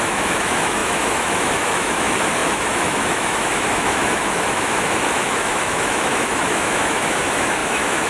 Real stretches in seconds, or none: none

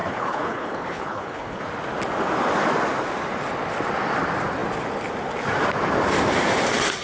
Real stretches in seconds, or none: 1.6-7.0

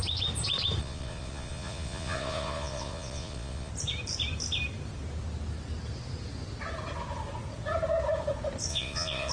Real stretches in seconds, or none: 0.0-0.8; 3.7-8.7